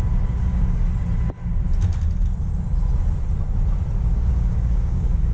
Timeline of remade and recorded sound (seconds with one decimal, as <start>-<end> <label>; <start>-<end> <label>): 0.0-0.8 remade; 0.8-4.0 recorded; 4.0-5.3 remade